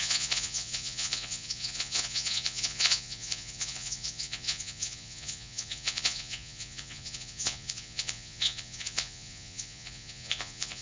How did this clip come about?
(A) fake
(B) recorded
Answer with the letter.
A